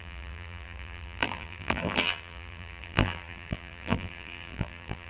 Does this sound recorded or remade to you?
remade